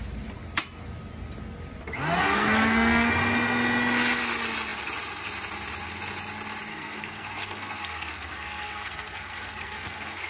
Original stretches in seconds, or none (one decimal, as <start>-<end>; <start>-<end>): 0.0-2.2; 3.1-6.7